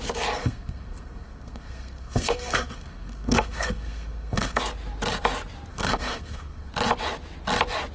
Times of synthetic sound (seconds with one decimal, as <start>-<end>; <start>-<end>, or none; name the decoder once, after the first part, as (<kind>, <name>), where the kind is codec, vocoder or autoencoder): 0.4-4.6 (codec, SNAC); 5.7-6.7